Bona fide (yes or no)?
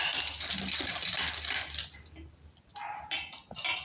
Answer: yes